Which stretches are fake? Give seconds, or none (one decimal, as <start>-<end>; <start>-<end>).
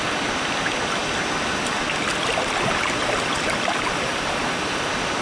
none